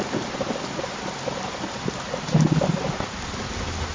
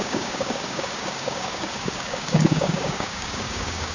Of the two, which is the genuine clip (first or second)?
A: first